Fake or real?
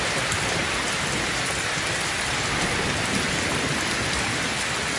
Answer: real